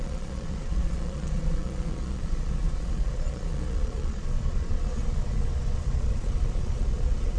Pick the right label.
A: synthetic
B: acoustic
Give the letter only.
A